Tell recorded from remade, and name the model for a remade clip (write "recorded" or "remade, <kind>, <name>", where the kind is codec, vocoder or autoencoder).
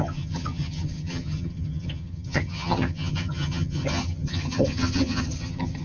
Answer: remade, vocoder, HiFi-GAN